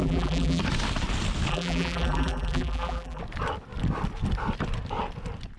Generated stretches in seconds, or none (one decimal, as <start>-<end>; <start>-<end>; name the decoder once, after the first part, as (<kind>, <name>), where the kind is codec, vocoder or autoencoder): 0.0-0.6 (vocoder, BigVGAN v2); 1.5-3.2